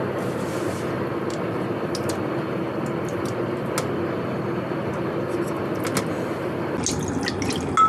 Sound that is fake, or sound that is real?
real